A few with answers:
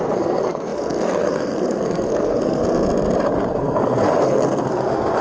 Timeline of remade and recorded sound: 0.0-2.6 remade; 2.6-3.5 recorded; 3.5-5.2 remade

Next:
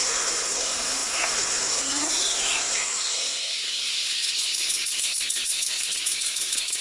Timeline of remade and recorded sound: 0.0-6.8 remade

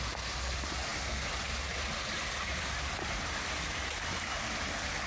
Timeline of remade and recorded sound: 0.0-0.9 remade; 0.9-1.4 recorded; 1.4-5.1 remade

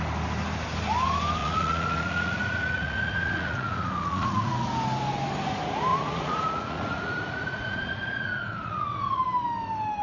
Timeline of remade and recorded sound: 0.0-1.4 recorded; 1.4-4.5 remade; 4.5-5.9 recorded; 5.9-9.2 remade; 9.2-10.0 recorded

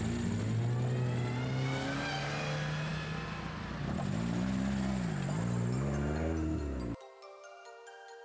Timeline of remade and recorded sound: 0.0-8.2 recorded

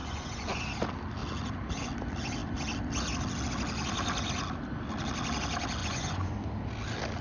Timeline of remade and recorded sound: 0.0-0.6 remade; 0.6-5.8 recorded; 5.8-6.3 remade; 6.3-7.2 recorded